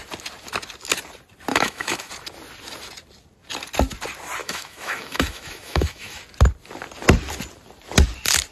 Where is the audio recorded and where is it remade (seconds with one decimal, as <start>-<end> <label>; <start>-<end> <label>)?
0.0-1.5 recorded; 1.5-2.1 remade; 2.1-4.4 recorded; 4.4-6.2 remade; 6.2-8.5 recorded